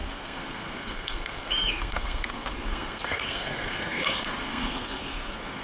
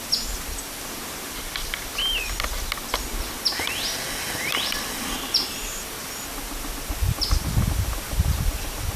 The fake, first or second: first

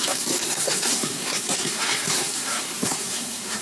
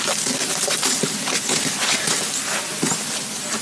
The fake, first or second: first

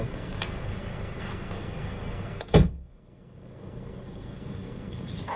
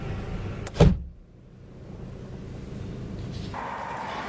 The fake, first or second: first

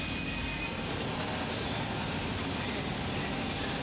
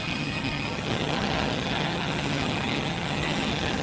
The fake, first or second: second